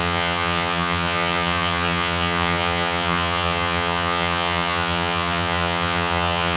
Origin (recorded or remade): remade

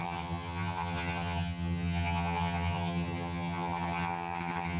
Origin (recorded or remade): remade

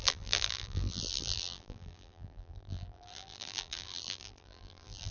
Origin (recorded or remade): remade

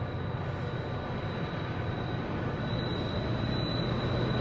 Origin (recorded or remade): recorded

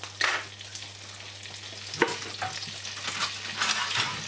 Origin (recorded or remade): recorded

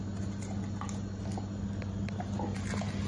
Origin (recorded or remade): recorded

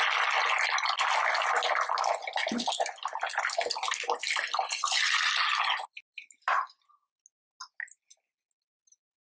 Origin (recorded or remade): recorded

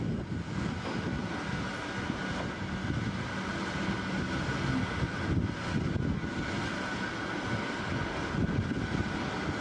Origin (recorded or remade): recorded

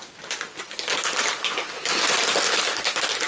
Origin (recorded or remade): recorded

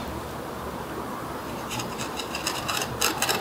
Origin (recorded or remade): remade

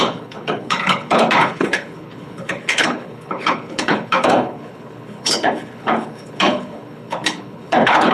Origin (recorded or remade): remade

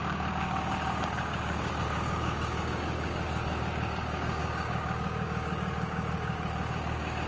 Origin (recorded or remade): remade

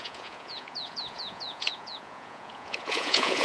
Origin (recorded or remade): remade